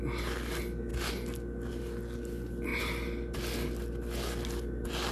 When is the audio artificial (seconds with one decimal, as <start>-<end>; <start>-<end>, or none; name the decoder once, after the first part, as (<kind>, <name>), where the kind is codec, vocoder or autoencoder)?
none